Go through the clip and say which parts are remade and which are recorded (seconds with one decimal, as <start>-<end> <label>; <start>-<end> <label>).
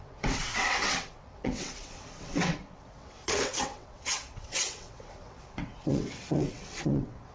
0.0-7.3 remade